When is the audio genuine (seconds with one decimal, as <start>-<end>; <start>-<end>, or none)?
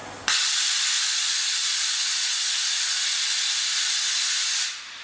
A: 0.0-5.0